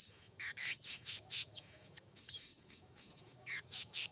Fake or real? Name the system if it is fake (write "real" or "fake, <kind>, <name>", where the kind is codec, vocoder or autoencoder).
fake, autoencoder, DAC-VAE